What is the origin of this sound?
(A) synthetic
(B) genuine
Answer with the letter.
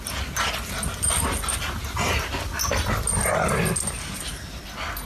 B